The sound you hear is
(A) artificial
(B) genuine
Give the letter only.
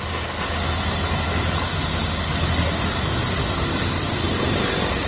B